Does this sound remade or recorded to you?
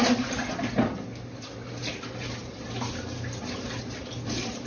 recorded